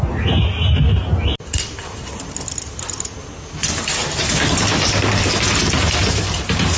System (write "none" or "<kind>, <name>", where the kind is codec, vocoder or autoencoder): none